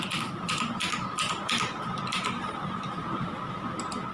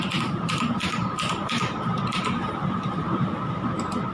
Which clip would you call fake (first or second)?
second